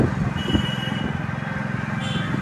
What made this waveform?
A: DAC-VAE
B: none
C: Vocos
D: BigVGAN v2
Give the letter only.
B